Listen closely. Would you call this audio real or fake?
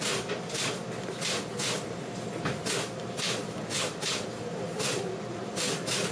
fake